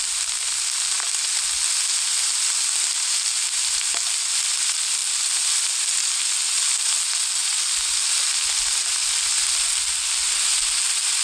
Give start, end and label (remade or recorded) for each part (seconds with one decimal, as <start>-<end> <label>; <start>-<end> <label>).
0.0-11.2 recorded